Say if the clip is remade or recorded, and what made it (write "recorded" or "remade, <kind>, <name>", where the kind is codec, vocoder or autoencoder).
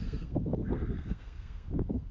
remade, codec, SNAC